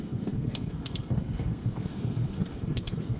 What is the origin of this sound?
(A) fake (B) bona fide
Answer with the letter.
A